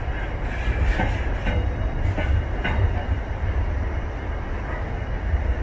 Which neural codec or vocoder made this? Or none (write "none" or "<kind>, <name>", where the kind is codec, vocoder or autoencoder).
none